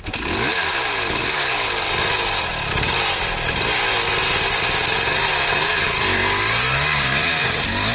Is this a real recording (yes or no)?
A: yes